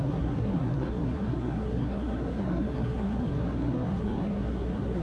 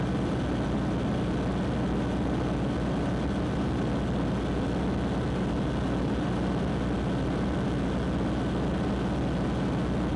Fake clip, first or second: first